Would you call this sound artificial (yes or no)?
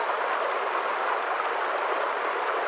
no